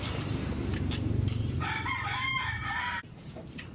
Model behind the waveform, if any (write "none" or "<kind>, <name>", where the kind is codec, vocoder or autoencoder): vocoder, BigVGAN v2